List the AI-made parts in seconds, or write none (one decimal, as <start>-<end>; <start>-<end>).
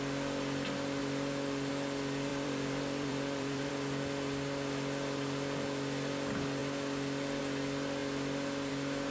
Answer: 2.3-3.7